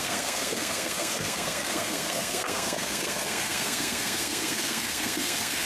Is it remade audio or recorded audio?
remade